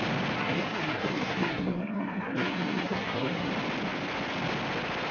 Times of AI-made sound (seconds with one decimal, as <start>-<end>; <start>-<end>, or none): 0.4-3.5